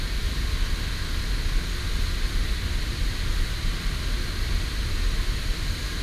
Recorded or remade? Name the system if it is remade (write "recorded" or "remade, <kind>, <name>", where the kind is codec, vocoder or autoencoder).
recorded